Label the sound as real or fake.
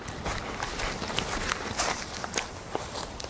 real